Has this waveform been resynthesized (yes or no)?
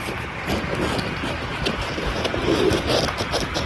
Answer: no